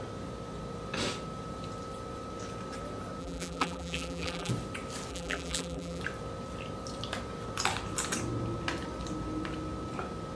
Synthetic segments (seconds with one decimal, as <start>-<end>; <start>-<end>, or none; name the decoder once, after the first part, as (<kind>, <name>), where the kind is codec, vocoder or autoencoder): 3.2-4.5 (vocoder, BigVGAN v2); 5.1-6.0